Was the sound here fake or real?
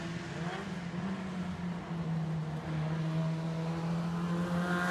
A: real